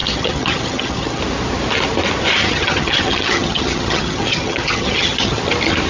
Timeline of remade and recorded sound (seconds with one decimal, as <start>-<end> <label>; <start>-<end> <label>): 0.0-1.2 remade; 1.2-2.4 recorded; 2.4-5.4 remade; 5.4-5.9 recorded